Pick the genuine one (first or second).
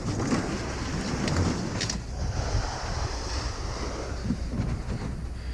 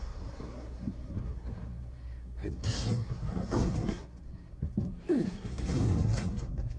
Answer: first